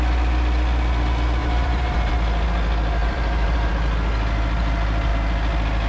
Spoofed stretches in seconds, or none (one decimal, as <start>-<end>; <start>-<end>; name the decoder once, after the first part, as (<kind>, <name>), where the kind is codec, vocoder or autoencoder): 1.4-2.1 (vocoder, BigVGAN v2); 3.0-3.7